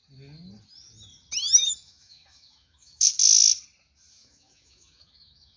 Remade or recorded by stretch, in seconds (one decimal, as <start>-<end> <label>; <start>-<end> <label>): 0.0-1.7 recorded; 1.7-3.1 remade; 3.1-4.1 recorded; 4.1-5.6 remade